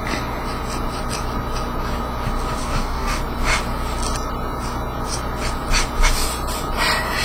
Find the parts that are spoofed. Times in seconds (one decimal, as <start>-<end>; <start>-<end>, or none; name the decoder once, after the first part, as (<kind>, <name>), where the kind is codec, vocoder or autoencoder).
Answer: 2.6-3.2 (codec, DAC)